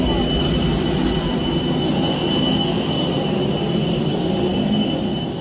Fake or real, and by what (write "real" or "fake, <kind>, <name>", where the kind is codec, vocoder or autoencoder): real